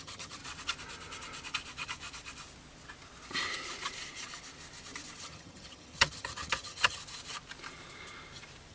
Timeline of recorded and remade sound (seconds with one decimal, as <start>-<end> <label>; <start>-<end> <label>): 0.0-0.4 remade; 0.4-5.2 recorded; 5.2-7.0 remade; 7.0-8.7 recorded